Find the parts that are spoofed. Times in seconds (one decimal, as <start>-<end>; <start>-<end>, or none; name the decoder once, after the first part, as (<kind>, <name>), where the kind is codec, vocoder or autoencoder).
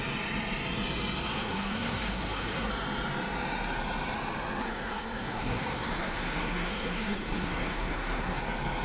1.3-2.7 (codec, SNAC); 4.6-8.4